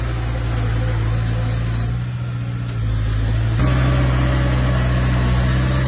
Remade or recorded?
recorded